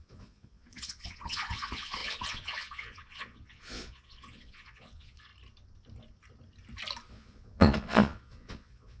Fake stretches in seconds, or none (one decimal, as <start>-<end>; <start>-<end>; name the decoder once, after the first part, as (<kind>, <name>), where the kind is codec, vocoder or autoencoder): 0.0-5.3 (vocoder, Vocos); 7.1-9.0